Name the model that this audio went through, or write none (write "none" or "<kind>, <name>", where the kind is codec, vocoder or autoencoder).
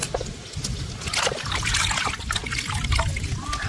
none